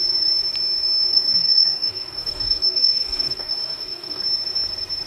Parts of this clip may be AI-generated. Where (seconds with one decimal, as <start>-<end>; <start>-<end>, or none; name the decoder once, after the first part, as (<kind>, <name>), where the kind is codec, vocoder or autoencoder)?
1.1-4.2 (codec, DAC)